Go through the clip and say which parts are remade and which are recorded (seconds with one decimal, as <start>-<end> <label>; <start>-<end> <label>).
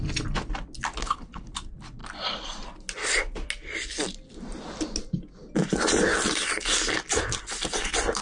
0.0-1.0 recorded; 1.0-1.5 remade; 1.5-8.2 recorded